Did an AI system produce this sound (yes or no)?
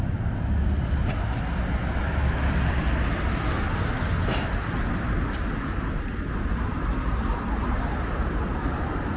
no